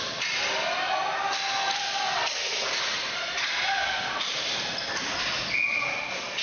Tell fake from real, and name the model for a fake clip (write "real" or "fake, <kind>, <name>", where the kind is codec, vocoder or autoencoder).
real